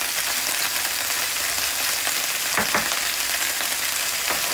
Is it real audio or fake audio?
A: real